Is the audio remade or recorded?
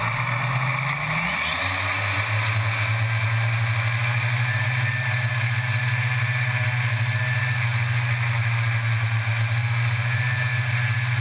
recorded